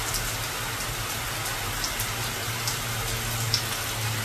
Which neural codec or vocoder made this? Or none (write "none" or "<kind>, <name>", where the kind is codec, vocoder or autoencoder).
none